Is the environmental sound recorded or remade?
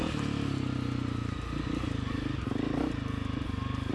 recorded